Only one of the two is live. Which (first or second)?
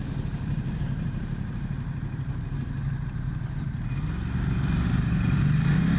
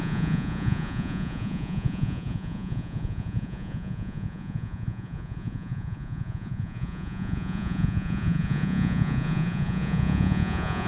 first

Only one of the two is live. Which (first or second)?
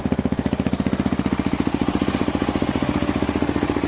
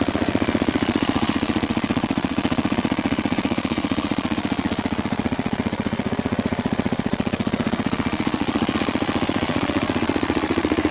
first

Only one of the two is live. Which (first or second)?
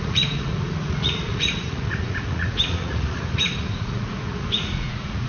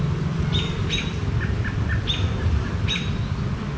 second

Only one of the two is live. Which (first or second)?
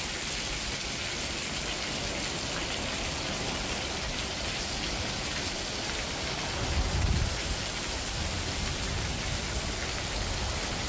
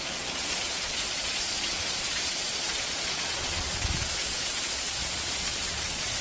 first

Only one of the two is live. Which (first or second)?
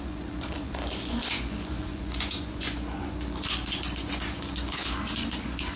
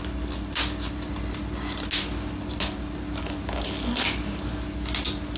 second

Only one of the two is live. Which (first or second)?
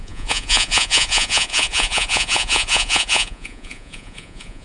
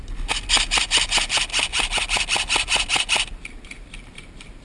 second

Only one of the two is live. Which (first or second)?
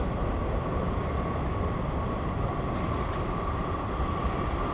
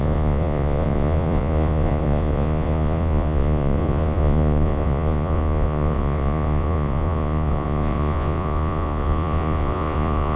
first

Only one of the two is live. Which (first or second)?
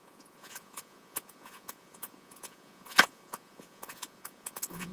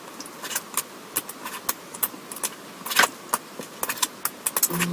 second